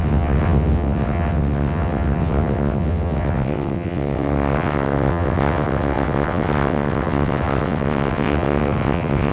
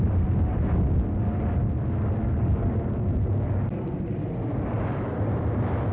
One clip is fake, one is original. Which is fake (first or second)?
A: first